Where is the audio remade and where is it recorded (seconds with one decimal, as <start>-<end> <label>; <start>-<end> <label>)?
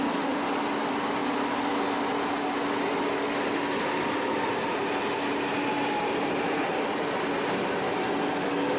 0.0-8.8 recorded